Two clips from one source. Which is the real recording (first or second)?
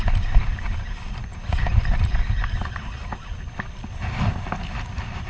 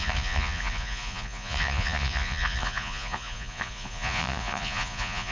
first